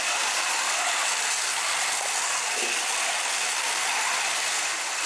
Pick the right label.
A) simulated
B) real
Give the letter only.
B